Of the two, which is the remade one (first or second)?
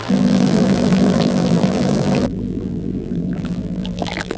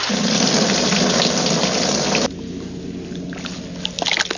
first